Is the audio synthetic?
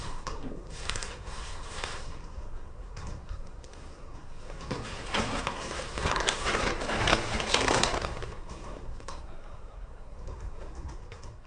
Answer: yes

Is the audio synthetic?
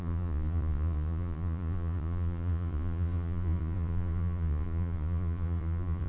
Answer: yes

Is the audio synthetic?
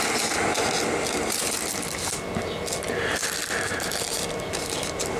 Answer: no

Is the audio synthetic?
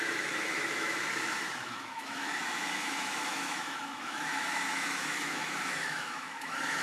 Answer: yes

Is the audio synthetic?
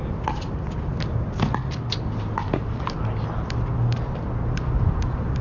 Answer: no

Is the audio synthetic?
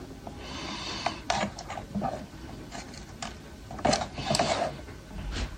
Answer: no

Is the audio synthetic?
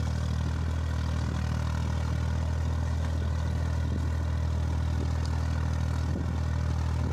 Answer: no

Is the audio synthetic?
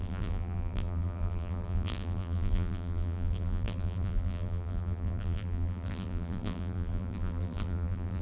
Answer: yes